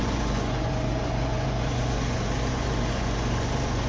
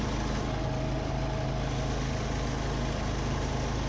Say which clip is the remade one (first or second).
first